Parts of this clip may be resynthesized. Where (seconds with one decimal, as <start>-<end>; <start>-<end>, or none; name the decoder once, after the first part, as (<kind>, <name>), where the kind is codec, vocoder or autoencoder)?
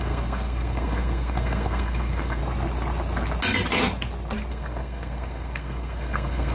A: 0.0-2.4 (codec, SNAC); 4.5-6.5